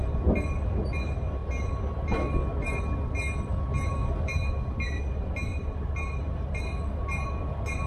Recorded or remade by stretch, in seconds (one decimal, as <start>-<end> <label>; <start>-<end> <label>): 0.0-4.0 recorded; 4.0-4.5 remade; 4.5-5.5 recorded; 5.5-6.6 remade; 6.6-7.9 recorded